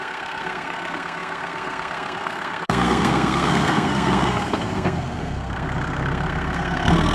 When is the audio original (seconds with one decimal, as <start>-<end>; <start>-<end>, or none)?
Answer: none